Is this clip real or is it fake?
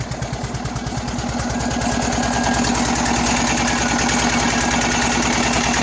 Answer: real